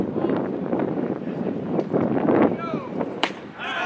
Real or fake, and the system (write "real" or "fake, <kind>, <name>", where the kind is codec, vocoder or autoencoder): fake, vocoder, BigVGAN v2